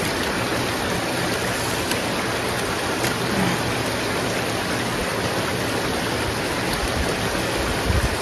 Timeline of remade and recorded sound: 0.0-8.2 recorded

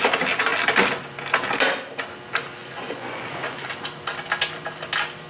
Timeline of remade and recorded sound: 0.0-2.6 recorded; 2.6-3.7 remade; 3.7-5.3 recorded